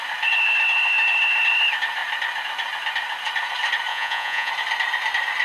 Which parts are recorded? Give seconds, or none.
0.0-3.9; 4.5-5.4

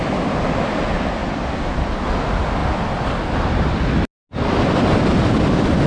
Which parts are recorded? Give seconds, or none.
0.0-1.2; 1.9-5.9

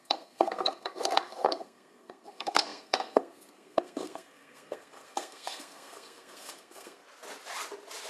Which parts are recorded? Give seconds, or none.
7.0-8.1

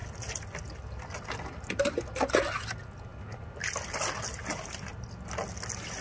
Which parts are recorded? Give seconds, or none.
0.0-6.0

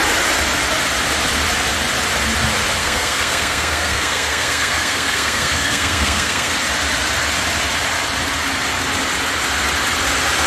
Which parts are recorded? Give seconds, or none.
0.0-2.8; 6.6-10.5

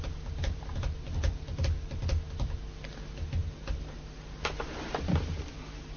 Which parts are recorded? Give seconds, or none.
0.0-6.0

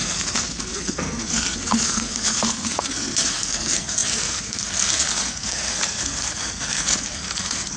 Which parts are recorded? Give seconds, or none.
none

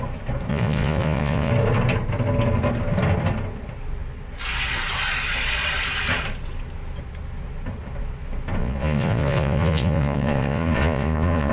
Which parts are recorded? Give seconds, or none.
0.0-0.5; 1.5-8.6